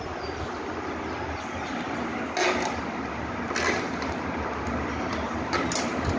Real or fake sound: real